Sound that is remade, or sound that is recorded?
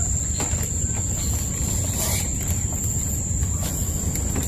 recorded